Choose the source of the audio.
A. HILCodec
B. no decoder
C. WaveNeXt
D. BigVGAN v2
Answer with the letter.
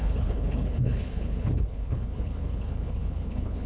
A